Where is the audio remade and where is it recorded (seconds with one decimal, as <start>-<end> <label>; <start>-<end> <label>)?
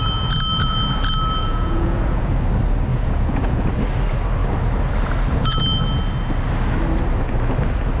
0.0-1.4 recorded; 1.4-2.3 remade; 2.3-2.9 recorded; 2.9-3.7 remade; 3.7-8.0 recorded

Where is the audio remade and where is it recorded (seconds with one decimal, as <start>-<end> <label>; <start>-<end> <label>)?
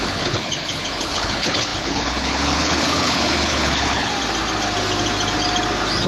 0.0-4.1 remade; 4.1-6.1 recorded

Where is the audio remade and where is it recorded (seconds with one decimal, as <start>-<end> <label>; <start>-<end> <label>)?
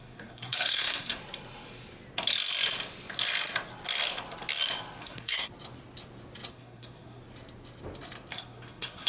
0.0-1.2 remade; 1.2-5.0 recorded; 5.0-5.5 remade; 5.5-6.5 recorded; 6.5-7.2 remade; 7.2-8.3 recorded; 8.3-9.1 remade